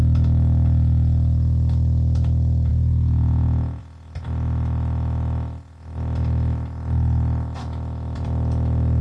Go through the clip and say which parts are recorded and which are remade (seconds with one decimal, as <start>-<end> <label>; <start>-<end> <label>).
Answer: 0.0-2.7 recorded; 2.7-3.8 remade; 3.8-9.0 recorded